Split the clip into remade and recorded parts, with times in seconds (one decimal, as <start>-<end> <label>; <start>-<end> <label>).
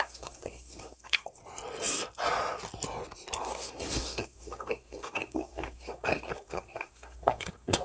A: 0.0-1.4 remade; 1.4-3.4 recorded; 3.4-7.8 remade